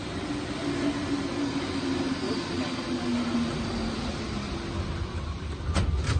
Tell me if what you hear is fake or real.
real